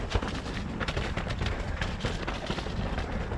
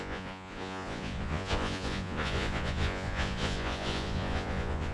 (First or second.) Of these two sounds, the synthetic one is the second